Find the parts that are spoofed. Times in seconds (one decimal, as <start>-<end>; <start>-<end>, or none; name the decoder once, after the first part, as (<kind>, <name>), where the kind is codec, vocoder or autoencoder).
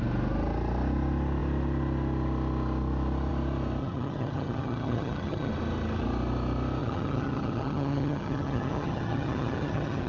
3.8-5.5 (vocoder, HiFi-GAN); 6.8-10.1